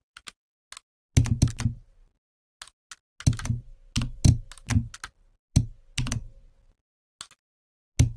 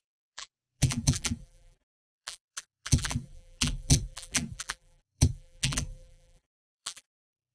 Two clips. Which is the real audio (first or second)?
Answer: first